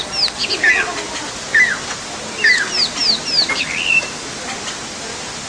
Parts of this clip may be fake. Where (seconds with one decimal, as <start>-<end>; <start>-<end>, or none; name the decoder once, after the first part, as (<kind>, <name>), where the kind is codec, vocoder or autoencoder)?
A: none